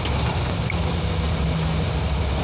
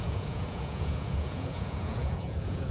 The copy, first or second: second